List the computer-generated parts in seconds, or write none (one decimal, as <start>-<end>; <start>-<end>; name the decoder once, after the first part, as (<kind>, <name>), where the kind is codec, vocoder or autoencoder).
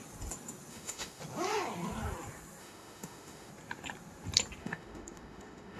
0.7-1.2 (autoencoder, DAC-VAE); 2.6-3.5; 4.6-5.8